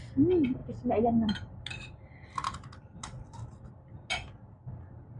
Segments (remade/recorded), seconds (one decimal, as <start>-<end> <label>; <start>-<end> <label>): 0.0-5.2 recorded